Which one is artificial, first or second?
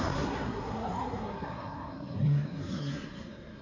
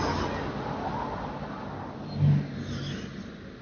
first